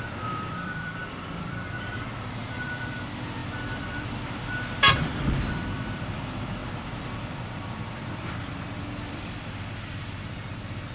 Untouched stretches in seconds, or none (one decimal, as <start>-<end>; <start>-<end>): none